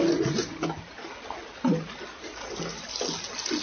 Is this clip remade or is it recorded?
recorded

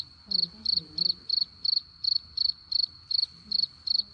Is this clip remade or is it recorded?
recorded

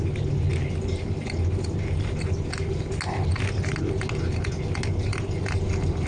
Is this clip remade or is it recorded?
recorded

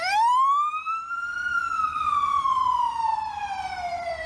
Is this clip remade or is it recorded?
remade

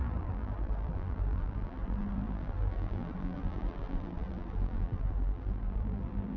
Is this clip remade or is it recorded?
remade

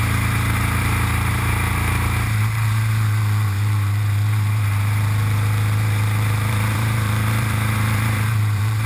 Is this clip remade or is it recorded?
remade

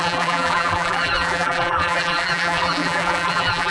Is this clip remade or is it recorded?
remade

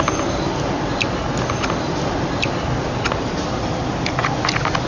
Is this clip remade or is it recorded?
recorded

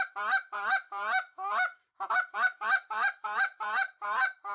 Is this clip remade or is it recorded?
remade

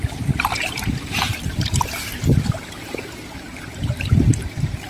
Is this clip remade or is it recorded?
remade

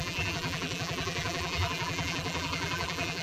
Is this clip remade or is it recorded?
remade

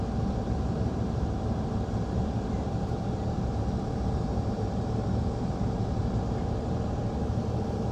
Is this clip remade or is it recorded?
remade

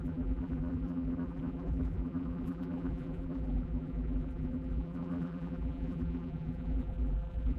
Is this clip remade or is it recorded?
remade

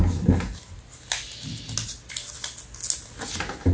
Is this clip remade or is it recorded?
recorded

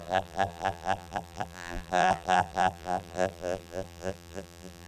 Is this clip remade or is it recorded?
remade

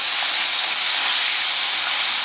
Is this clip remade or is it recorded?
recorded